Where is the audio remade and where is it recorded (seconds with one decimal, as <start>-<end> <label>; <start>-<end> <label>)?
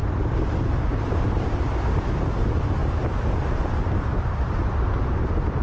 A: 0.0-1.4 remade; 1.4-5.6 recorded